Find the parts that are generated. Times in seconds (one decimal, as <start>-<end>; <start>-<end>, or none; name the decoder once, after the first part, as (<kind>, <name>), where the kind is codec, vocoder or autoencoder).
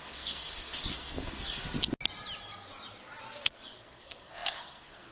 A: 0.0-1.6 (codec, SNAC); 3.5-5.1